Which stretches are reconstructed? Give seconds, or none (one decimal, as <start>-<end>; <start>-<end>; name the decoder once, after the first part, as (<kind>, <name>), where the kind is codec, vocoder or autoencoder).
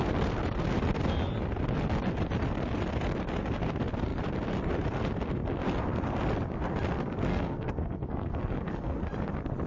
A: 7.3-9.0 (codec, SNAC)